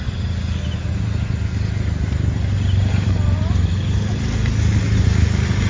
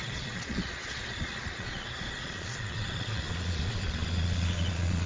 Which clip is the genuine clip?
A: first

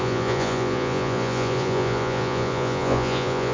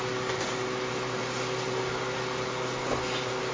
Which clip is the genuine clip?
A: second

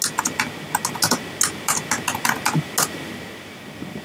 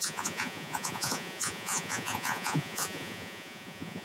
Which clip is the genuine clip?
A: first